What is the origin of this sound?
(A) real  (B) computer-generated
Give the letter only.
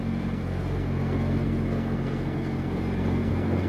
B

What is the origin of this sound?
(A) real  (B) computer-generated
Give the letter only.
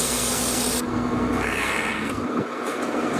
B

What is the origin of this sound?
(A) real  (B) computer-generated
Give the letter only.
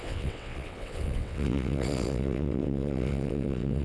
B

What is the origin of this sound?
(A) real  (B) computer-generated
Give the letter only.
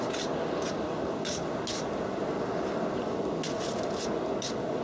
A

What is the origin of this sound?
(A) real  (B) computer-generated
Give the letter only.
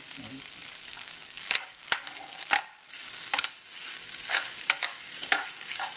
B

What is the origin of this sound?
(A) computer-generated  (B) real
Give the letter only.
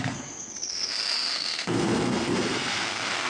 A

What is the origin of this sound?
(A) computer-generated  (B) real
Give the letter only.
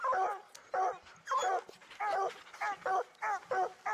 B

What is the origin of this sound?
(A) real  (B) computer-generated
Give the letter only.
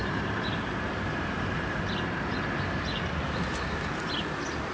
B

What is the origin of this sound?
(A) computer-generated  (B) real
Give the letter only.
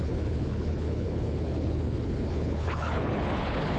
A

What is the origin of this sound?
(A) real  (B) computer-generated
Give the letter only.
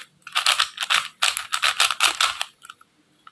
A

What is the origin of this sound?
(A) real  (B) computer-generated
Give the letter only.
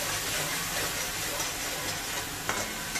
A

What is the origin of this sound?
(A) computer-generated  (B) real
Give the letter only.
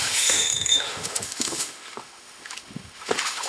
A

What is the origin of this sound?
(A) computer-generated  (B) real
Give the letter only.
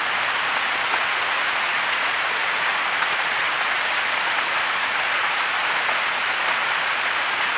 A